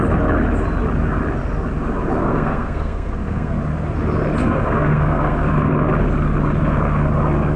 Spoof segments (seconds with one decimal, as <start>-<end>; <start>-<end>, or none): 2.2-3.6; 4.4-5.7